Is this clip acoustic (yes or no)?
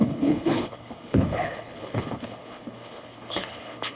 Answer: no